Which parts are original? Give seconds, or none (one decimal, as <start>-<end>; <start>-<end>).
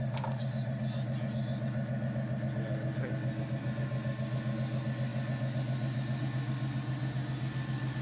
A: 0.0-8.0